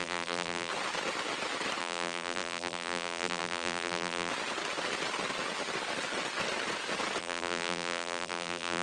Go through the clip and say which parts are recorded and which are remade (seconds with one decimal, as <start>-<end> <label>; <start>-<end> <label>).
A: 0.0-0.7 remade; 0.7-1.8 recorded; 1.8-4.3 remade; 4.3-7.2 recorded; 7.2-8.8 remade

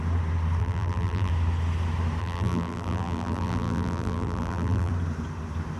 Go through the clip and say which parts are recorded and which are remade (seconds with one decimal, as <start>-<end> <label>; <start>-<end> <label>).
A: 0.0-0.6 recorded; 0.6-1.3 remade; 1.3-2.2 recorded; 2.2-4.9 remade; 4.9-5.8 recorded

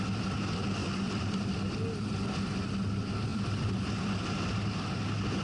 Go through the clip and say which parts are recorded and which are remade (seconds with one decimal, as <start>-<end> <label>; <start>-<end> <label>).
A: 0.0-0.8 recorded; 0.8-1.5 remade; 1.5-3.3 recorded; 3.3-4.2 remade; 4.2-5.4 recorded

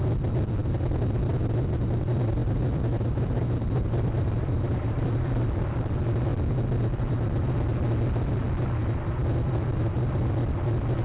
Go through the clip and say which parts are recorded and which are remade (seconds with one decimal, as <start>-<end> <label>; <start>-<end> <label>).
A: 0.0-2.4 recorded; 2.4-5.2 remade; 5.2-11.0 recorded

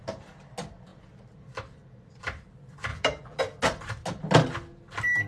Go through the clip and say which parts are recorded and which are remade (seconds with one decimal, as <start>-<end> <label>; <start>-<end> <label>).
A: 0.0-2.9 recorded; 2.9-3.4 remade; 3.4-5.3 recorded

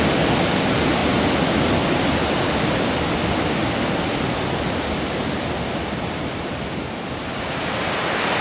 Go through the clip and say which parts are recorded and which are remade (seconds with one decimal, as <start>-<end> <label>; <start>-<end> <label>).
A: 0.0-8.4 recorded

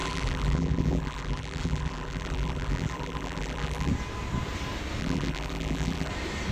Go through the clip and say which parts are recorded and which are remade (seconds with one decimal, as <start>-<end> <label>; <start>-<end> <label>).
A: 0.0-3.9 remade; 3.9-5.0 recorded; 5.0-6.1 remade; 6.1-6.5 recorded

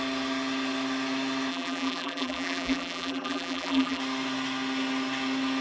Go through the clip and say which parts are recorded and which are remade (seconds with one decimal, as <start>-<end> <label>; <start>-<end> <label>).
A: 0.0-1.5 recorded; 1.5-4.0 remade; 4.0-5.6 recorded